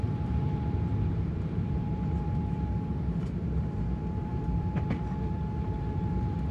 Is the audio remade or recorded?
remade